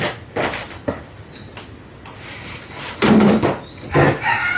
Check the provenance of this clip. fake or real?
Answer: real